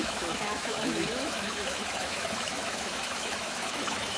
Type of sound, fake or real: fake